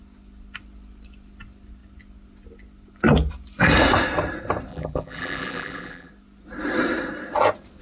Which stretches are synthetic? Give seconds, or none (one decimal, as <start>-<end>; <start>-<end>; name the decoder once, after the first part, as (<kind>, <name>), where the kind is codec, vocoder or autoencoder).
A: 4.7-6.1 (vocoder, BigVGAN v2)